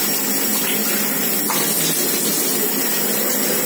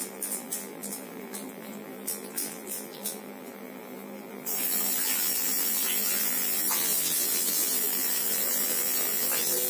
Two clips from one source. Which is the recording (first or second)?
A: first